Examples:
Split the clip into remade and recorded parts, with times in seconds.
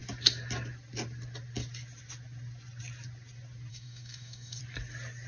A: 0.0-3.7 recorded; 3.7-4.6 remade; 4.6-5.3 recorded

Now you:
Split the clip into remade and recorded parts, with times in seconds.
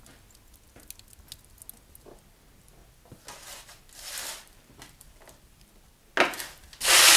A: 0.0-2.8 recorded; 2.8-5.7 remade; 5.7-7.2 recorded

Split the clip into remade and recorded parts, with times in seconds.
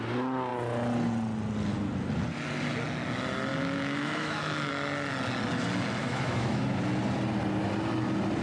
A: 0.0-3.5 recorded; 3.5-4.7 remade; 4.7-6.0 recorded; 6.0-6.8 remade; 6.8-8.4 recorded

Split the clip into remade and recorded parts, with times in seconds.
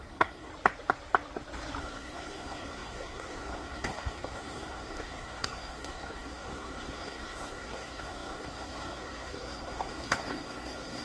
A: 0.0-0.5 remade; 0.5-1.8 recorded; 1.8-11.0 remade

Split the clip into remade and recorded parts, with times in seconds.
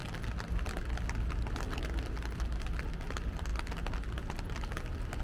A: 0.0-5.2 recorded